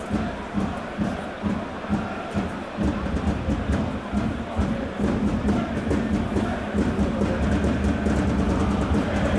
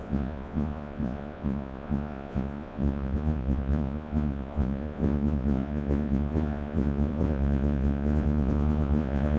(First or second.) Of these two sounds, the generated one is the second